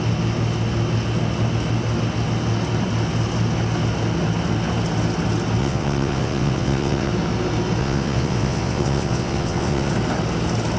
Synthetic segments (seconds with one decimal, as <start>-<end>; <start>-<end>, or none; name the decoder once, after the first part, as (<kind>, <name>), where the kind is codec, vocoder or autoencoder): 5.6-7.1 (vocoder, WaveNeXt); 7.8-9.9